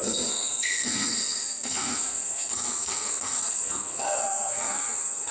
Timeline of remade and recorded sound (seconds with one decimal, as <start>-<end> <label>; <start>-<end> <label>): 0.0-5.3 remade